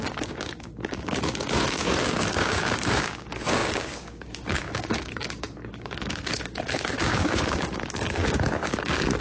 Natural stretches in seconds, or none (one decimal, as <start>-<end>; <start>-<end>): none